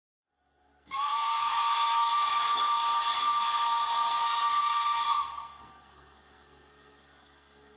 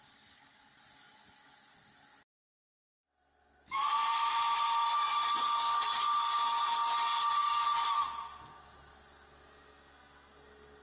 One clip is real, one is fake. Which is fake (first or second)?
first